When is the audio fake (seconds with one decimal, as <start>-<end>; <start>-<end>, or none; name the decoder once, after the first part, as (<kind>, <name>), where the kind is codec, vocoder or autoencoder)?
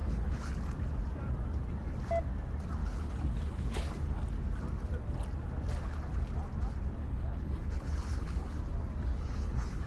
0.0-0.5 (codec, HILCodec); 2.8-4.2; 7.0-8.6; 9.1-9.9